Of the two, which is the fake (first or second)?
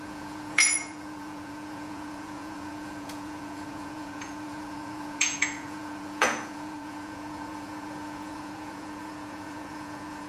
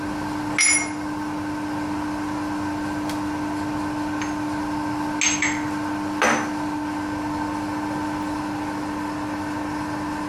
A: first